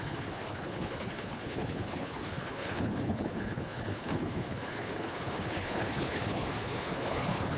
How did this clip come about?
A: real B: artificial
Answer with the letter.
B